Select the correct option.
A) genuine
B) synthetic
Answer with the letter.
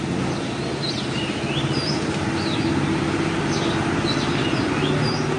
A